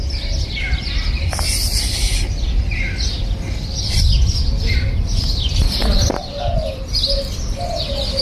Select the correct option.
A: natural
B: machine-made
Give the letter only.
B